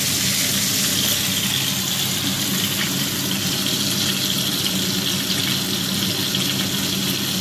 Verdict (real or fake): real